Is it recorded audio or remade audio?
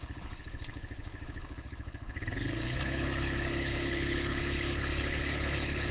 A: remade